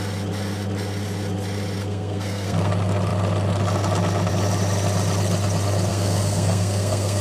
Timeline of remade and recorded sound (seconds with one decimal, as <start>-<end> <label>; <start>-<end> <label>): 0.0-1.8 recorded; 1.8-2.7 remade; 2.7-5.9 recorded; 5.9-7.2 remade